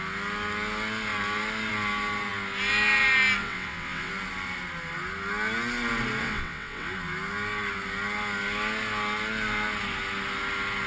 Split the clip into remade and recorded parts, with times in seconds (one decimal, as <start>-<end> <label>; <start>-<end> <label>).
0.0-3.4 recorded; 3.4-4.1 remade; 4.1-6.2 recorded; 6.2-6.9 remade; 6.9-10.9 recorded